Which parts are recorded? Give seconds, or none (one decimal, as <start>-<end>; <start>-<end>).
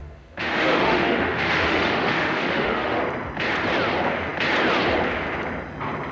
3.0-6.1